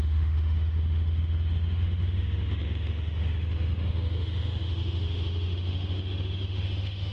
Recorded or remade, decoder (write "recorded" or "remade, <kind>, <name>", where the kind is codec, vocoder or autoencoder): remade, autoencoder, DAC-VAE